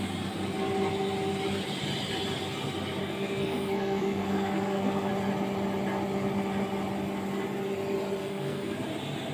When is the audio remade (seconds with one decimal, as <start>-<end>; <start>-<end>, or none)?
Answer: 3.0-5.1; 8.2-8.8